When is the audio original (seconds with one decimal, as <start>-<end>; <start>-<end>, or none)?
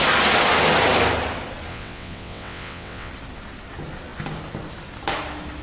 0.0-1.7; 3.1-5.6